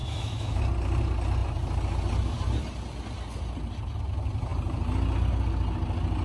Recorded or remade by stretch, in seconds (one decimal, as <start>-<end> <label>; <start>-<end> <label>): 0.0-0.6 remade; 0.6-6.2 recorded